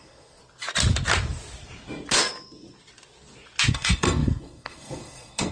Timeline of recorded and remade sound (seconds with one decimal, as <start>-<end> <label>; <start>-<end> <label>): 0.0-0.4 remade; 0.4-3.7 recorded; 3.7-5.5 remade